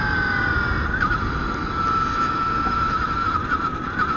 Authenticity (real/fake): real